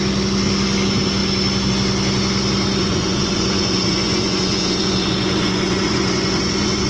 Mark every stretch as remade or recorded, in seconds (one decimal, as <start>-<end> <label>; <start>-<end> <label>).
0.0-2.8 recorded; 2.8-6.9 remade